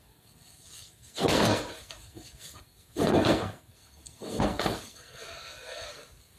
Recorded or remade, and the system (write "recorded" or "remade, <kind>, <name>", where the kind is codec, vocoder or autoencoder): remade, codec, SNAC